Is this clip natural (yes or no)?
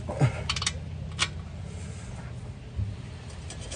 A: yes